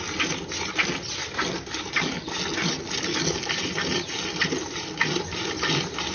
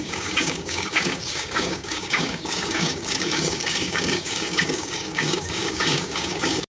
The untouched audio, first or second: first